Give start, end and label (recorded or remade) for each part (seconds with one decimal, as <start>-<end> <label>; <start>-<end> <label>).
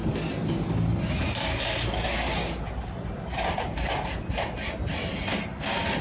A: 0.0-6.0 recorded